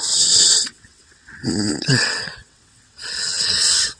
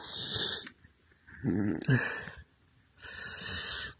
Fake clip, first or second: first